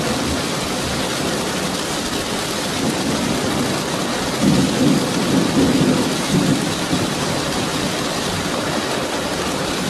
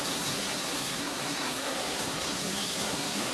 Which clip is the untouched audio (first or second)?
first